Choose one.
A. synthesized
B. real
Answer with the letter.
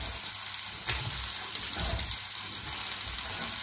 B